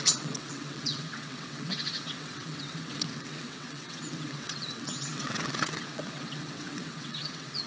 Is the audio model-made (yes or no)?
yes